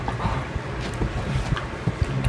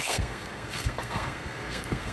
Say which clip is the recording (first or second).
first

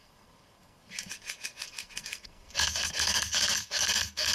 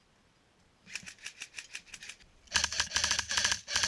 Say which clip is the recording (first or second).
second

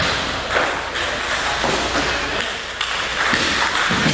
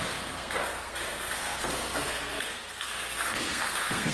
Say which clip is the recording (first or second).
first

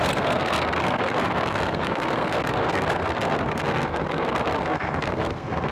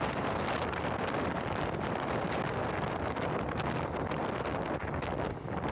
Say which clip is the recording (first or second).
second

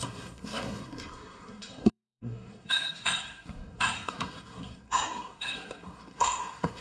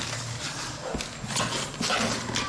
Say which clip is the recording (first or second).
second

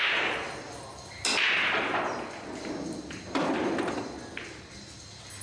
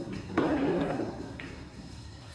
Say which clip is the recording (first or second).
first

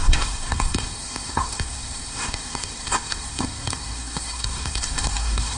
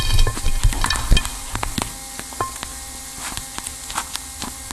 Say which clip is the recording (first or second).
second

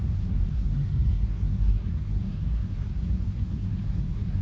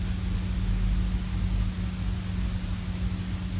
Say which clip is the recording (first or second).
second